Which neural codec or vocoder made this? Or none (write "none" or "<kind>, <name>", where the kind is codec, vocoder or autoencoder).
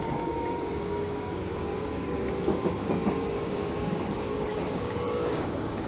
codec, DAC